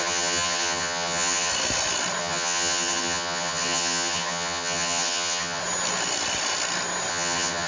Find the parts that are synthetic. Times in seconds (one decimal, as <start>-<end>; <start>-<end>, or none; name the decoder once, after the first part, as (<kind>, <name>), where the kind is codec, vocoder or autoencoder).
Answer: 0.0-1.5 (vocoder, HiFi-GAN); 2.2-5.6; 7.1-7.7